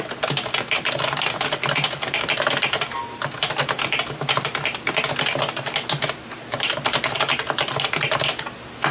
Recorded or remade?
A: recorded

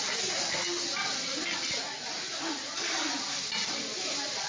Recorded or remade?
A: recorded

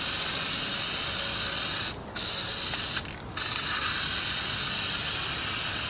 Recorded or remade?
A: recorded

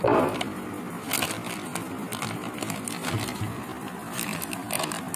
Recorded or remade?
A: recorded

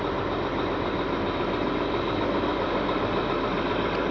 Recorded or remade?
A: recorded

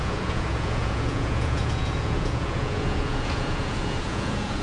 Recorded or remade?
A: remade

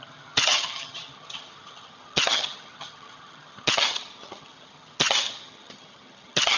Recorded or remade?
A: remade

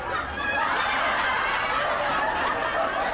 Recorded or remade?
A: recorded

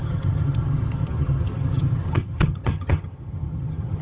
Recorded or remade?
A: remade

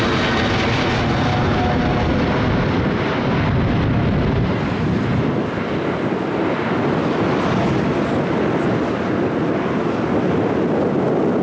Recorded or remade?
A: recorded